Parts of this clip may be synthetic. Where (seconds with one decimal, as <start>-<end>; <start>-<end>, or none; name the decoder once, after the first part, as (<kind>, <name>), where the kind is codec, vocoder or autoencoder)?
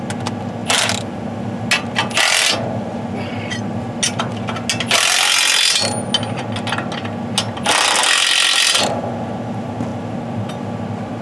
none